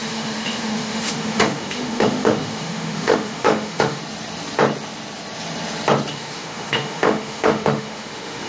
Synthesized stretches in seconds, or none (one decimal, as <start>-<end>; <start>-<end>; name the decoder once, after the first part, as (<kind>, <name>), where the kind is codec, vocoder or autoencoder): 0.0-4.0 (autoencoder, DAC-VAE); 6.1-8.5